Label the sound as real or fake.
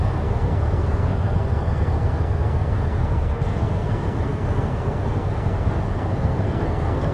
fake